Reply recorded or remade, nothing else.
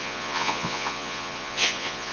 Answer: remade